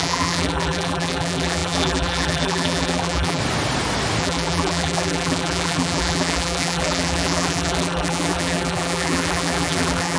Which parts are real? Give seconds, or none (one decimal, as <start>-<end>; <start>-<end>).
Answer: 3.4-4.2